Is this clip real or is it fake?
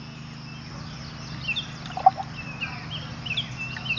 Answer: real